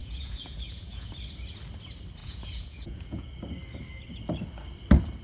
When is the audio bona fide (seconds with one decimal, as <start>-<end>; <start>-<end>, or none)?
1.1-2.2; 3.3-5.2